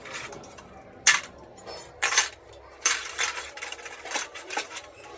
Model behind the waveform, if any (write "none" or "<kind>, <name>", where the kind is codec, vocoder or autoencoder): none